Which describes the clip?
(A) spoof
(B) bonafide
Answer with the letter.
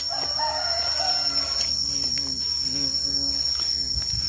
B